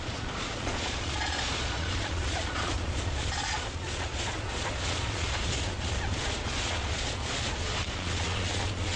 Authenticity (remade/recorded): remade